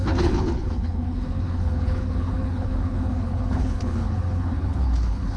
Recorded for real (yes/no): no